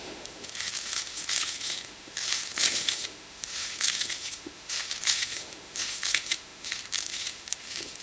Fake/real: fake